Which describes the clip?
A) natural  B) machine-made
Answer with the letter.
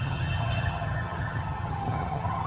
B